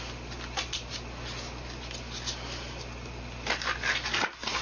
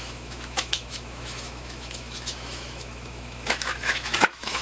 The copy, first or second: second